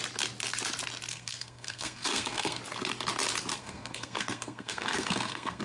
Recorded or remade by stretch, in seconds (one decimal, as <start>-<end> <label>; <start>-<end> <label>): 0.0-1.1 recorded; 1.1-2.6 remade; 2.6-3.5 recorded; 3.5-5.6 remade